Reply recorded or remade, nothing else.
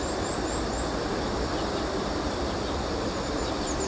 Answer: recorded